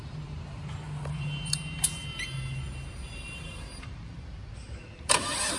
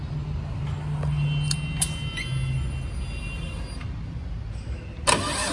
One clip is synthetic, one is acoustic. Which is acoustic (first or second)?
second